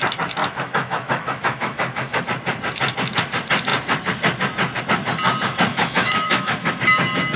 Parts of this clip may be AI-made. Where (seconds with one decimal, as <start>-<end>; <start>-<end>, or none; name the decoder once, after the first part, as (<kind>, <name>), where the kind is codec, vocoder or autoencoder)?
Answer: 0.4-2.2 (autoencoder, DAC-VAE); 5.7-6.7